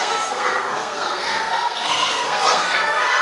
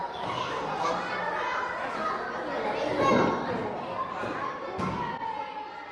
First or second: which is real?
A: second